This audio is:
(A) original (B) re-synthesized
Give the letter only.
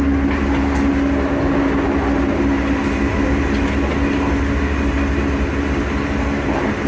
A